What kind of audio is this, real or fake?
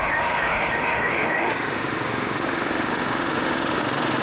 fake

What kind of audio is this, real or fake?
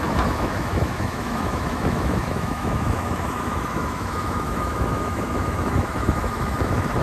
fake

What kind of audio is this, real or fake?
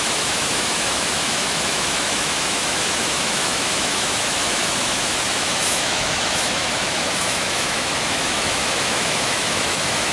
fake